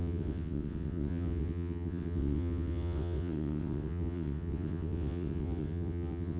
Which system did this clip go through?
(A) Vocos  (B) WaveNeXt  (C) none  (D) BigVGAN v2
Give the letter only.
B